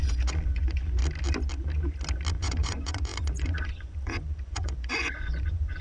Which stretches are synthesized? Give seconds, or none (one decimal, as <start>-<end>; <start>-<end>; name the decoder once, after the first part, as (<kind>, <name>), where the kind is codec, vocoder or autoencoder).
0.0-1.0 (vocoder, Vocos); 2.3-5.8